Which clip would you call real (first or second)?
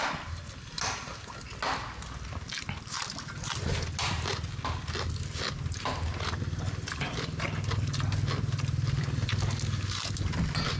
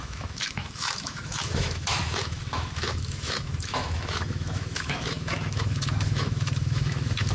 first